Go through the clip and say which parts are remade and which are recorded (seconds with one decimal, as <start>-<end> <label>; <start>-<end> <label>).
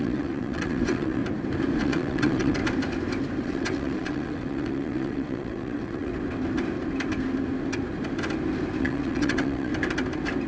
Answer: 0.0-1.2 remade; 1.2-1.8 recorded; 1.8-2.6 remade; 2.6-3.4 recorded; 3.4-6.1 remade; 6.1-8.8 recorded; 8.8-9.7 remade; 9.7-10.5 recorded